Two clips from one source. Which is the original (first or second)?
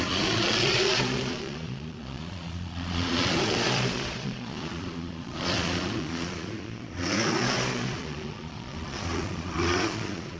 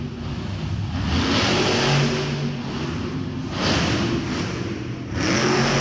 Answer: second